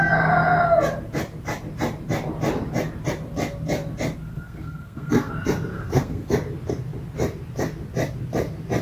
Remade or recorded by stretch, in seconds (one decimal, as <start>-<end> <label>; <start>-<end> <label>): 0.0-4.3 recorded; 4.3-5.3 remade; 5.3-5.7 recorded; 5.7-6.3 remade; 6.3-8.8 recorded